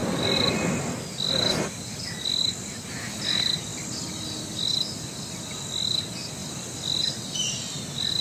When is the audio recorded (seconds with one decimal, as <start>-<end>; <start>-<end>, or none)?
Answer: 0.0-8.2